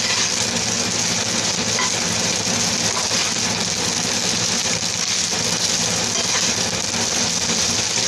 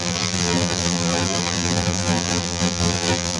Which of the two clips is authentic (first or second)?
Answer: first